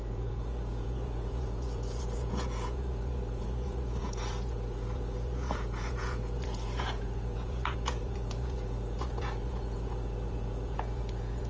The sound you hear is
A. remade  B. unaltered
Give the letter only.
A